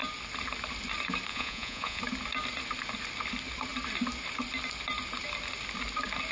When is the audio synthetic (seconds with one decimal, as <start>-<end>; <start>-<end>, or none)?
1.3-2.0